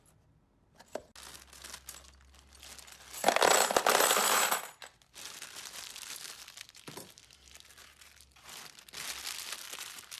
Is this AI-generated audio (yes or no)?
no